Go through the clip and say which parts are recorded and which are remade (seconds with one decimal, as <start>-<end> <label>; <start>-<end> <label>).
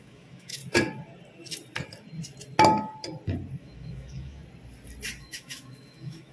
0.0-0.6 remade; 0.6-3.6 recorded; 3.6-4.4 remade; 4.4-5.2 recorded; 5.2-6.3 remade